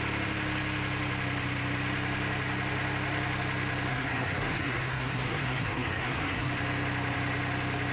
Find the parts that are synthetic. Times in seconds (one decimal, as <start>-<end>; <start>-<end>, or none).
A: 3.9-6.5

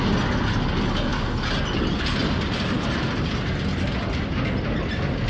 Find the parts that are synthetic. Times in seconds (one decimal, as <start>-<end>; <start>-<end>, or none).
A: none

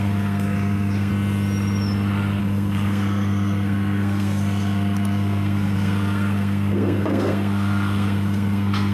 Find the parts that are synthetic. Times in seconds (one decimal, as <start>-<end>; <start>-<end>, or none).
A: 0.0-1.1; 2.4-8.9

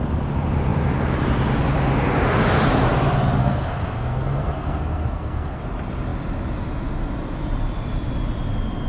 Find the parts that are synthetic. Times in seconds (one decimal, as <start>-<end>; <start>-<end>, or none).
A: 3.4-5.6

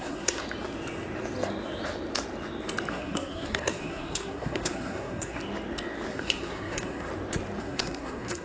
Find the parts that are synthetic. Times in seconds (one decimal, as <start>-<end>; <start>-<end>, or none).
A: 0.0-0.4; 2.9-5.4; 6.1-7.1; 7.6-8.4

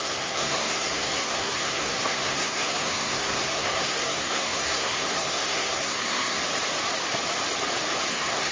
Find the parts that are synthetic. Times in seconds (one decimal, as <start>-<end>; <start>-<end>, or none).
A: 0.0-6.4; 8.1-8.5

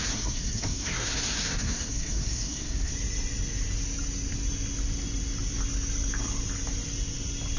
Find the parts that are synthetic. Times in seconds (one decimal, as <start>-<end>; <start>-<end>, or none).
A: 0.0-2.9

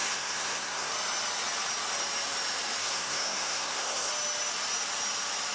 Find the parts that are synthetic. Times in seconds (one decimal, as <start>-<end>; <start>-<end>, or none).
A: 0.0-0.9; 2.8-4.1